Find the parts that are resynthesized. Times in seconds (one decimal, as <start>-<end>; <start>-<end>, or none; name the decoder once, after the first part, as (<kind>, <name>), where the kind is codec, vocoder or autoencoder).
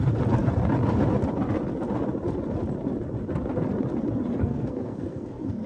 4.3-5.7 (codec, SNAC)